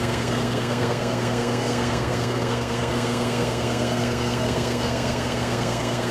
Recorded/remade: remade